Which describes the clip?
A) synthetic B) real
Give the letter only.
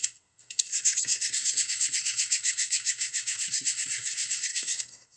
A